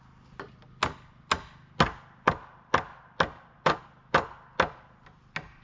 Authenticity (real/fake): real